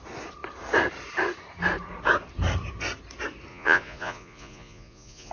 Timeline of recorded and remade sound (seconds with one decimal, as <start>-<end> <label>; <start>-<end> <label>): 0.0-3.5 recorded; 3.5-5.3 remade